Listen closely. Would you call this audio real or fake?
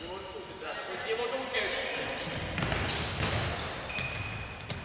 real